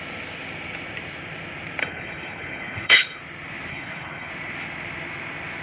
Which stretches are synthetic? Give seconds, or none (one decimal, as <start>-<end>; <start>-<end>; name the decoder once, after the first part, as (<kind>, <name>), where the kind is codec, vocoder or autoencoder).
1.8-3.2 (codec, HILCodec); 3.7-4.3